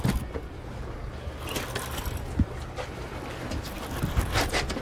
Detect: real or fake real